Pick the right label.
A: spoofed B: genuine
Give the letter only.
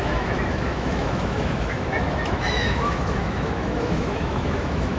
A